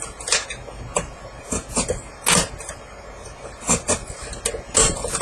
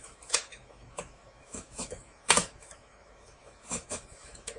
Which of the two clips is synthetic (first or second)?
second